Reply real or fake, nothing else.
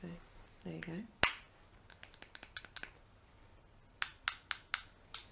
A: real